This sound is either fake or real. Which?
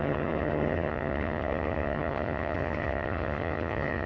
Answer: fake